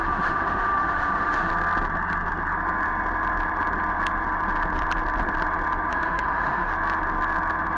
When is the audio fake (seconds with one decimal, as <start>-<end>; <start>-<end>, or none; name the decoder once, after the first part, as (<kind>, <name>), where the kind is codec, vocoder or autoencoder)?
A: 0.0-1.5 (autoencoder, DAC-VAE); 5.9-6.7